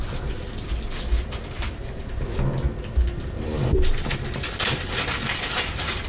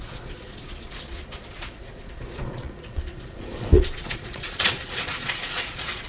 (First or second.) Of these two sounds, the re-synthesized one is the second